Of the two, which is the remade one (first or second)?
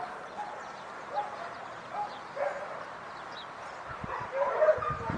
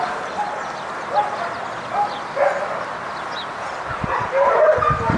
first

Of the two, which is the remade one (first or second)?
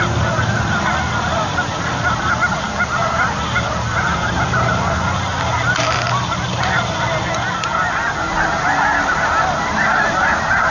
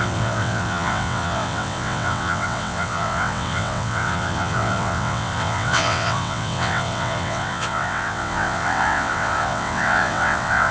second